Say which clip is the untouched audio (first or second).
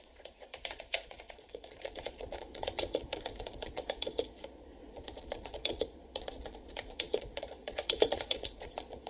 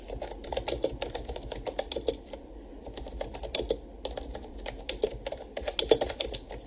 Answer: second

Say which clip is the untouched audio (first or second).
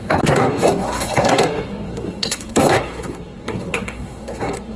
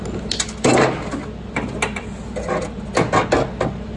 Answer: second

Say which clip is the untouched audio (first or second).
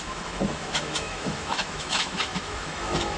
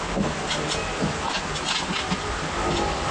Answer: second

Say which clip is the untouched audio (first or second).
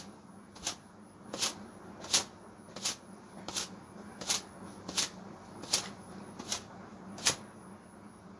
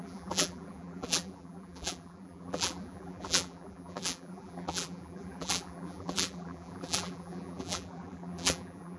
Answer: first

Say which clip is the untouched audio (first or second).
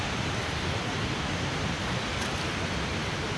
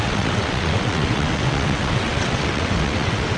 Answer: first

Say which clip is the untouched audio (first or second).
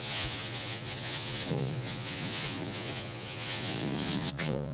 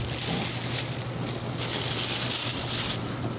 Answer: second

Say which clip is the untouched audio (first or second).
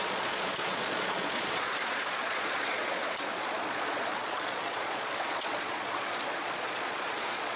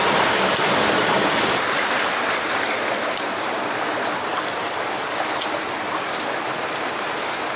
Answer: second